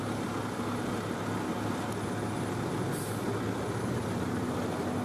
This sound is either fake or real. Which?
real